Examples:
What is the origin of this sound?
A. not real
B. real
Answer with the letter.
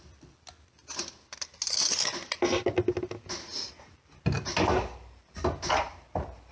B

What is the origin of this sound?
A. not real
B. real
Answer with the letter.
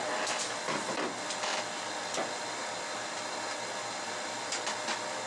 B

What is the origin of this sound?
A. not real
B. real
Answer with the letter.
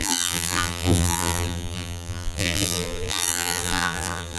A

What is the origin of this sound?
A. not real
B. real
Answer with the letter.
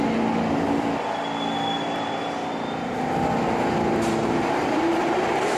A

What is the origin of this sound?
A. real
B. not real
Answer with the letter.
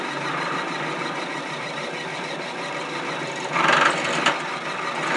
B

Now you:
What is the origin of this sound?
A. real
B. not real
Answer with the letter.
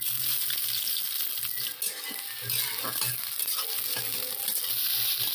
A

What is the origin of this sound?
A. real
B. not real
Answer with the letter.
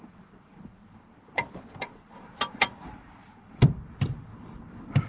B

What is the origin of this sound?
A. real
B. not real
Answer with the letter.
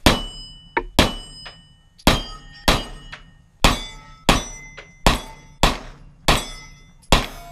A